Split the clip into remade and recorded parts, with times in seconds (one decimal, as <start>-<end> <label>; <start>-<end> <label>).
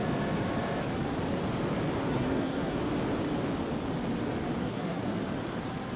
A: 0.0-2.1 recorded; 2.1-2.8 remade; 2.8-4.6 recorded; 4.6-5.2 remade; 5.2-6.0 recorded